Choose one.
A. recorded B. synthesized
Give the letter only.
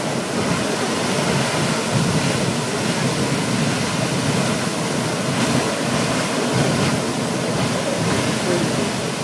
A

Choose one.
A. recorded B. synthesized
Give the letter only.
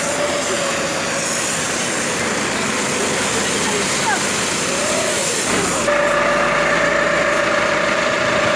A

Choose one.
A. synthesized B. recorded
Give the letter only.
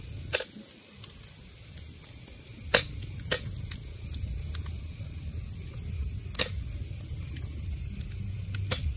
B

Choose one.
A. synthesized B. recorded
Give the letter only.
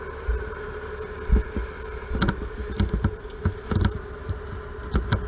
B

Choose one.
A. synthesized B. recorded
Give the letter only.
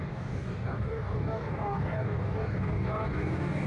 A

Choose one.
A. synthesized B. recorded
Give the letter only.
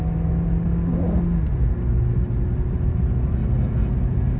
B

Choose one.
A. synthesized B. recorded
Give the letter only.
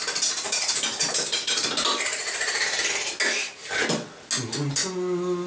B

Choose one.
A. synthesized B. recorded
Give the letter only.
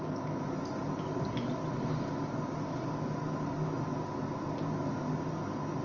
B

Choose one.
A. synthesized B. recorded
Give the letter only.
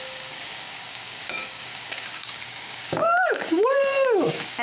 A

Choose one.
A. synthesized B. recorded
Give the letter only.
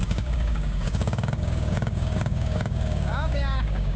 A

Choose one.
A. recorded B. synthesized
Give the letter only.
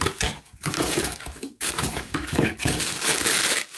B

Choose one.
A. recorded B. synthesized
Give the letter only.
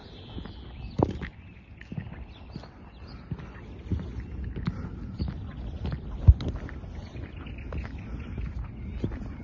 A